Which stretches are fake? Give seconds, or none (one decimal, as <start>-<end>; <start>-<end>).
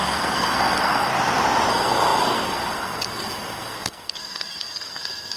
0.0-1.1; 1.7-5.4